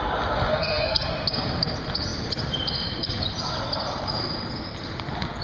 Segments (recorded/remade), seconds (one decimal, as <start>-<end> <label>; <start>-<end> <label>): 0.0-0.5 recorded; 0.5-1.1 remade; 1.1-5.4 recorded